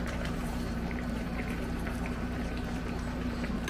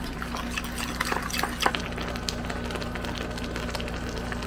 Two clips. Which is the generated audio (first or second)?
first